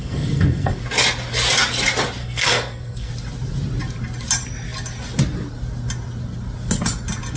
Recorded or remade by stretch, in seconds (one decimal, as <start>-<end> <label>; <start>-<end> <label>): 0.0-0.8 remade; 0.8-2.2 recorded; 2.2-3.1 remade; 3.1-7.4 recorded